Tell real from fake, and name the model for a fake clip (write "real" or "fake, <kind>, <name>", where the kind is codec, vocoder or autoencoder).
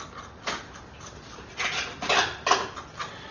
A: real